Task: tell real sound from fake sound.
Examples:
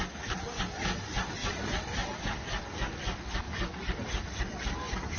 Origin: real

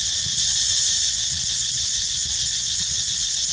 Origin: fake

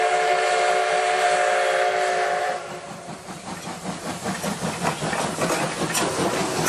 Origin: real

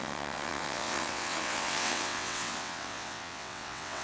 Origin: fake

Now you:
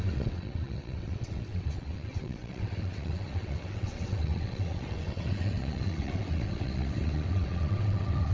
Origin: fake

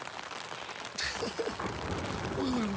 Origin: real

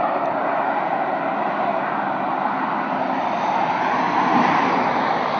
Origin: real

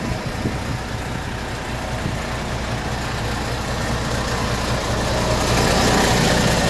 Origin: real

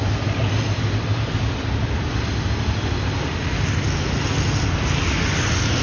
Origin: real